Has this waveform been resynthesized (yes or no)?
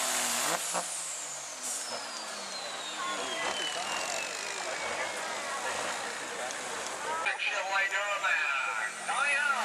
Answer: no